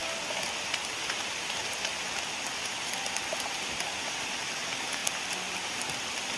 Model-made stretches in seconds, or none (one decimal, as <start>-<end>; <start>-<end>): none